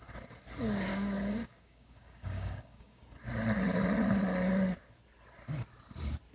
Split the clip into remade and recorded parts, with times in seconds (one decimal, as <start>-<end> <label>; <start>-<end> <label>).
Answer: 0.0-0.9 recorded; 0.9-3.0 remade; 3.0-6.3 recorded